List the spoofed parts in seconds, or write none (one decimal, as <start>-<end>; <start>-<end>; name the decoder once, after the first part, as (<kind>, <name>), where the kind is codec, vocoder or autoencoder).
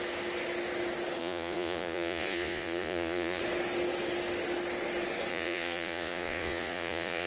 1.2-3.4 (vocoder, Vocos); 5.3-7.3